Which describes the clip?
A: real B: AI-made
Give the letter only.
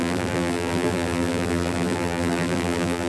B